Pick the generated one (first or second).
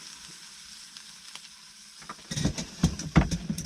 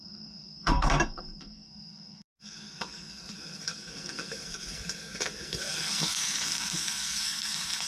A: second